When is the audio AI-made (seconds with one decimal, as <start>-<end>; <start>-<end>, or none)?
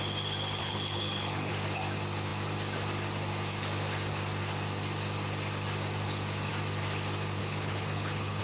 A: 0.6-1.5; 7.4-8.4